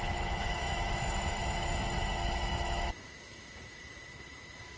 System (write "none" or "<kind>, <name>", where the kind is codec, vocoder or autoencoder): autoencoder, DAC-VAE